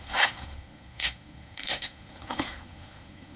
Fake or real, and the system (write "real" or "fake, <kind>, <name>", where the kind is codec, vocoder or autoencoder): fake, codec, SNAC